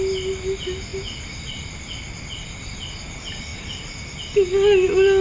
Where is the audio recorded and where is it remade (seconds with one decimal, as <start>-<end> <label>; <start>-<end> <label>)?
0.0-5.2 recorded